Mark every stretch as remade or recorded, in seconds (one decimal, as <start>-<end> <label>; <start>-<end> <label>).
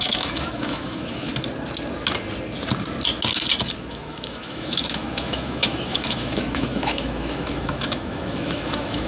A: 0.0-1.3 remade; 1.3-3.9 recorded; 3.9-9.1 remade